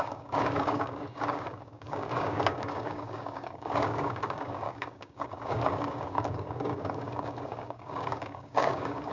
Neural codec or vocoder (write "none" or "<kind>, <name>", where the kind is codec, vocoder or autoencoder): codec, DAC